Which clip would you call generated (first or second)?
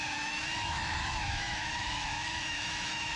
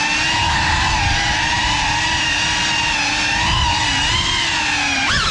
first